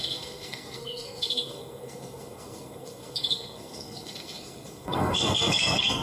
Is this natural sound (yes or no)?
no